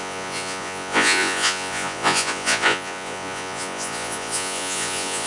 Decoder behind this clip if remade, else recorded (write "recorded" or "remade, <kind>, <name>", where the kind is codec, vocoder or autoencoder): remade, vocoder, Vocos